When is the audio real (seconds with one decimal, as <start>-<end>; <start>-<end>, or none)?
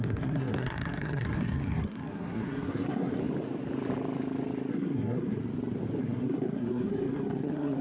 3.1-4.7; 5.4-6.0